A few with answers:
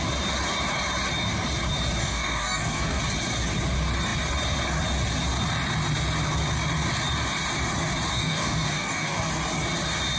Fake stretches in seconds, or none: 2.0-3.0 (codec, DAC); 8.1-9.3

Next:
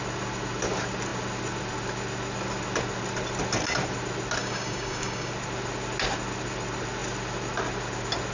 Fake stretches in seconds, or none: 4.4-5.3 (codec, DAC)

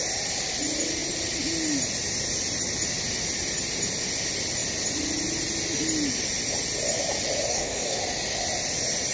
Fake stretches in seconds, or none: 7.5-8.0 (codec, DAC)

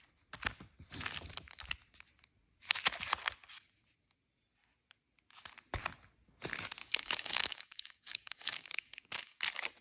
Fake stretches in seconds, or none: 6.8-9.4 (codec, DAC)